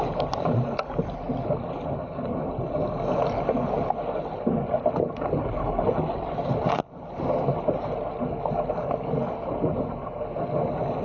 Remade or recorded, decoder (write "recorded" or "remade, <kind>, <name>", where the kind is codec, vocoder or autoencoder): recorded